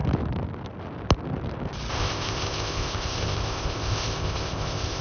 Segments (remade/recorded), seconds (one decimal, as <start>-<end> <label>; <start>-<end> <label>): 0.0-1.9 recorded; 1.9-5.0 remade